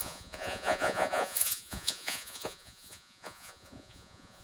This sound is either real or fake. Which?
fake